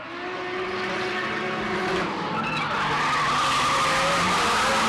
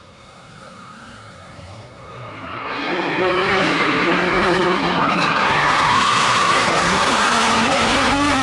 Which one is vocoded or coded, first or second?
second